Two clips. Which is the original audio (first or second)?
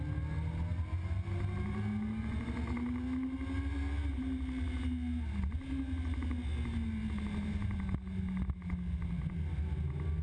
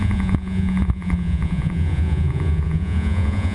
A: first